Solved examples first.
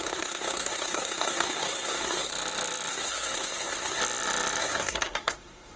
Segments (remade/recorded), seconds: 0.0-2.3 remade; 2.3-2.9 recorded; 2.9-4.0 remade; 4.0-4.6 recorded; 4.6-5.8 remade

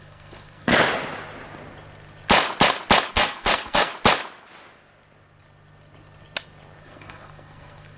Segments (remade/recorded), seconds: 0.0-0.7 remade; 0.7-3.1 recorded; 3.1-3.9 remade; 3.9-6.8 recorded; 6.8-8.0 remade

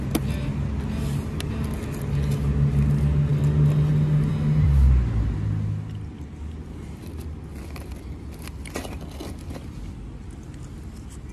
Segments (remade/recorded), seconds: 0.0-11.3 recorded

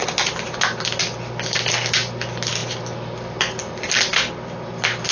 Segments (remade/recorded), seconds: 0.0-5.1 recorded